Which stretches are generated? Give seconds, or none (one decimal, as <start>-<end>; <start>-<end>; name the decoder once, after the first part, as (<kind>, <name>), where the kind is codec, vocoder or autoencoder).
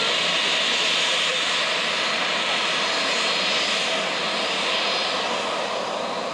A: 1.3-3.1 (vocoder, BigVGAN v2)